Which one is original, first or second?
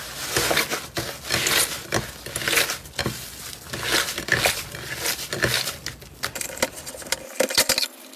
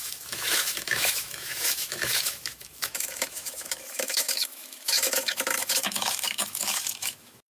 first